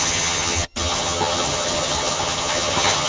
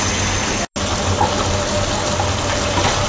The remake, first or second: first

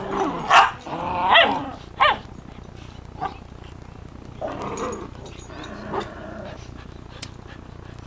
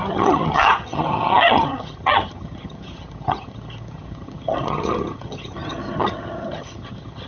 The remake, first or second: second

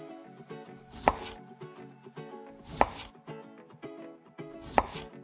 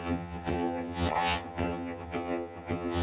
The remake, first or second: second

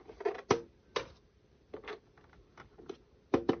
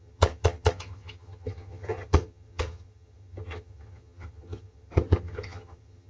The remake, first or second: second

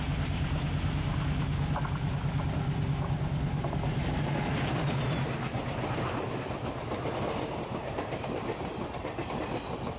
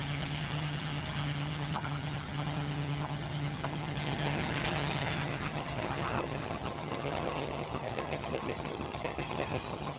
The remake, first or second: second